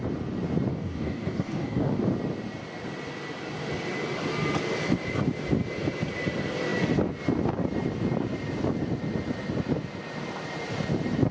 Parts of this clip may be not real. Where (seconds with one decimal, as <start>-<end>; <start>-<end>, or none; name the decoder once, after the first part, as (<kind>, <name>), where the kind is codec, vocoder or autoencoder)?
0.7-2.0 (codec, DAC)